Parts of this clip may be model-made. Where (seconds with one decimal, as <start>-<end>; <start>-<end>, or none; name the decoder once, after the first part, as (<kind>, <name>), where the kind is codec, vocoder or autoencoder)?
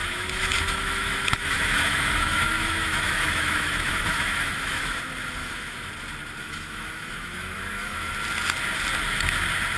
0.0-5.0 (autoencoder, DAC-VAE); 5.4-5.9; 6.4-8.1